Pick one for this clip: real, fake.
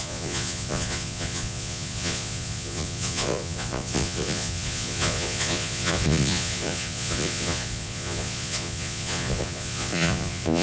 fake